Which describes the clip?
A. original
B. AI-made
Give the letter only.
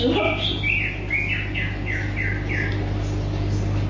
A